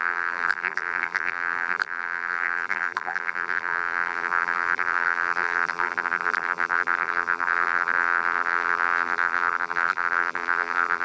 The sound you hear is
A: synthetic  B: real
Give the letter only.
A